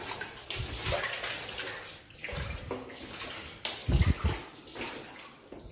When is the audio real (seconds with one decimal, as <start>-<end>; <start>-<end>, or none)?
0.0-5.7